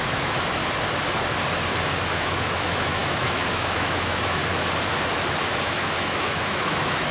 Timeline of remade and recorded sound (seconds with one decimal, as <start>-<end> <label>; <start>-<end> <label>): 0.0-0.6 remade; 0.6-2.1 recorded; 2.1-4.4 remade; 4.4-5.5 recorded; 5.5-7.1 remade